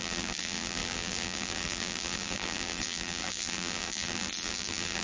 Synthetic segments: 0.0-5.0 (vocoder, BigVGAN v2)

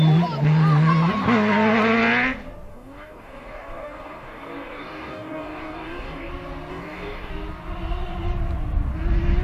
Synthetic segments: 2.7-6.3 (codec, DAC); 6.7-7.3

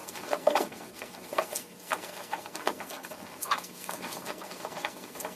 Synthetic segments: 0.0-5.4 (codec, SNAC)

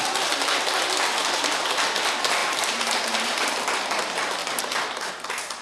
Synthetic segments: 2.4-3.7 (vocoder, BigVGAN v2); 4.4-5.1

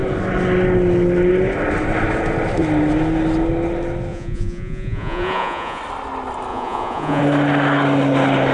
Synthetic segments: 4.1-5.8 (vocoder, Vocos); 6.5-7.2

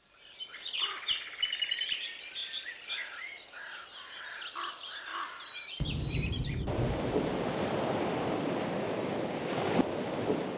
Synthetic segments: 2.4-3.5 (vocoder, BigVGAN v2); 5.1-8.4

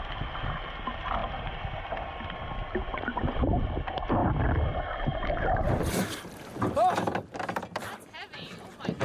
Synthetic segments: none

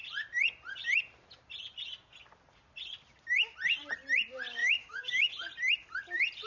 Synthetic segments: 4.6-5.3 (autoencoder, DAC-VAE)